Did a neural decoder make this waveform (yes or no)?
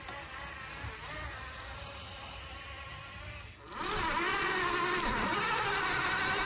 no